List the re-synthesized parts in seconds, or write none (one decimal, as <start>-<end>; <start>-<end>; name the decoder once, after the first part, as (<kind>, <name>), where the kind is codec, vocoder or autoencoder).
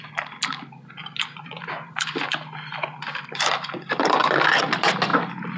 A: 1.0-4.4 (vocoder, BigVGAN v2)